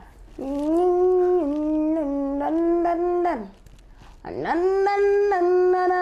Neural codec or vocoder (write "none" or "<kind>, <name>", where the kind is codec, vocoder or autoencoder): none